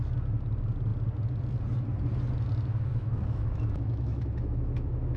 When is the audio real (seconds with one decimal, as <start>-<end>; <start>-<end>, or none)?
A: 0.0-2.9